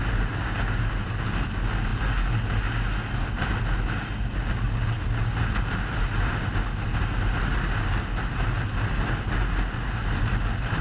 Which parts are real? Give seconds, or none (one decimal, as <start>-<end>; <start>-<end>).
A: 0.0-0.4; 0.9-10.8

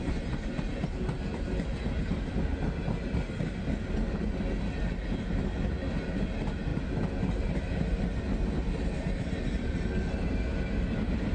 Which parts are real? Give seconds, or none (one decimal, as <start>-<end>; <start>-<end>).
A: 0.0-11.3

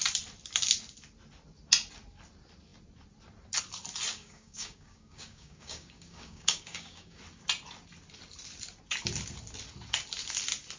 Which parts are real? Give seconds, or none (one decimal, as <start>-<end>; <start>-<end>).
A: 0.0-4.1; 7.2-10.8

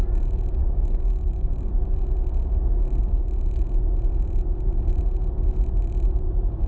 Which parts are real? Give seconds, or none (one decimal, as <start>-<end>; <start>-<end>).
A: 0.0-0.6; 1.7-6.7

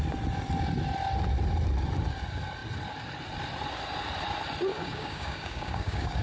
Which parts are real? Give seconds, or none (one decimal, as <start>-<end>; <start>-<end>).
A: 0.0-4.7